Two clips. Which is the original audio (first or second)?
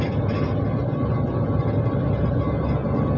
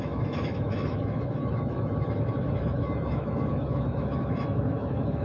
first